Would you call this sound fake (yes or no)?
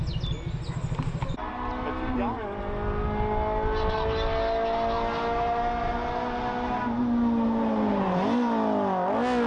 no